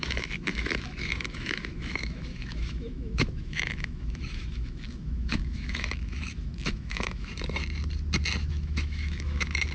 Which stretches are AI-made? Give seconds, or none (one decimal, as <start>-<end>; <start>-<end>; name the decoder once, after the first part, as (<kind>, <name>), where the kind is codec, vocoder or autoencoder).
0.0-7.3 (autoencoder, DAC-VAE); 8.5-9.7